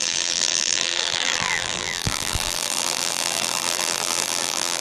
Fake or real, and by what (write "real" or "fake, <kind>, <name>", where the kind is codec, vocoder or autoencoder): fake, vocoder, BigVGAN v2